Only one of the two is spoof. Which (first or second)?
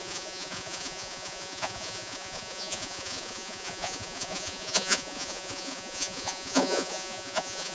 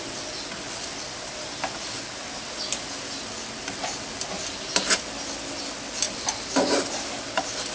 first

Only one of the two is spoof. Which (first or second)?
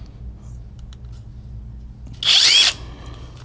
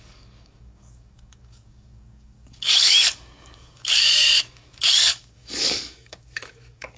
second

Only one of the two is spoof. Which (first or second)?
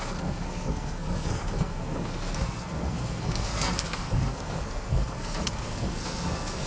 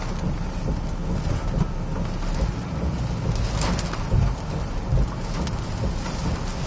first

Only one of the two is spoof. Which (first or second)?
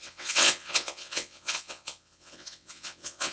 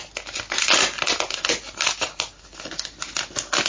first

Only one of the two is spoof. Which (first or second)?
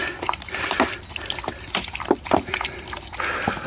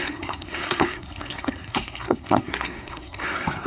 second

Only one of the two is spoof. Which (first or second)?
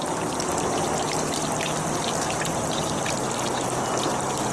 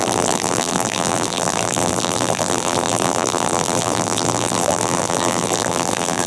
second